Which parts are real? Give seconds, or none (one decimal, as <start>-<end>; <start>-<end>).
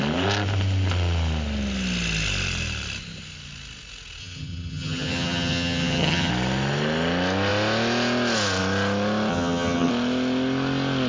0.0-4.2; 6.3-9.3; 9.9-11.1